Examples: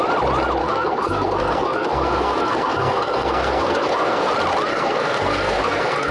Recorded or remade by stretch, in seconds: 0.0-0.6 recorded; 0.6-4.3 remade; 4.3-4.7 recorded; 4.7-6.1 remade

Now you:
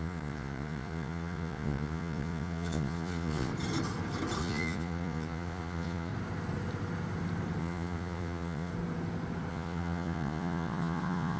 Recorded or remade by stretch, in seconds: 0.0-3.5 remade; 3.5-4.4 recorded; 4.4-6.1 remade; 6.1-7.6 recorded; 7.6-8.7 remade; 8.7-9.5 recorded; 9.5-11.4 remade

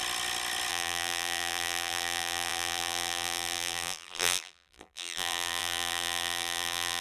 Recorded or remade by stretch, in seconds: 0.0-0.7 recorded; 0.7-7.0 remade